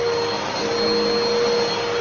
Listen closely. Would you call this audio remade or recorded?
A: recorded